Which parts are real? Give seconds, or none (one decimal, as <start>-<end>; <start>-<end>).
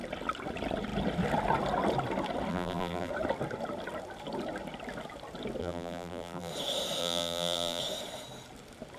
0.0-2.5; 3.1-5.6; 6.5-7.0; 7.8-9.0